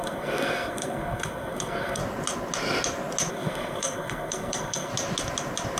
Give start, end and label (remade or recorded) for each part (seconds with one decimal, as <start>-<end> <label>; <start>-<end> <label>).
0.0-2.0 remade; 2.0-3.3 recorded; 3.3-4.9 remade; 4.9-5.8 recorded